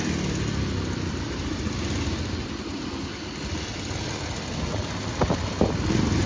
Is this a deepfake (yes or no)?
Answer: no